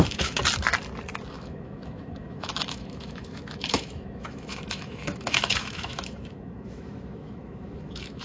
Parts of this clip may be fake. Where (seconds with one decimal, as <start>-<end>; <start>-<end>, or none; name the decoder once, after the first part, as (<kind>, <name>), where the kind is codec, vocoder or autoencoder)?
0.0-0.4 (autoencoder, DAC-VAE); 1.3-8.2